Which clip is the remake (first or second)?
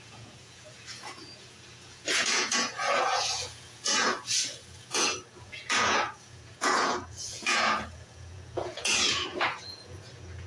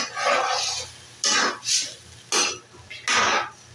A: first